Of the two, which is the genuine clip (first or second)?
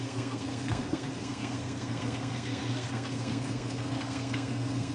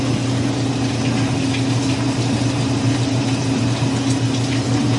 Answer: second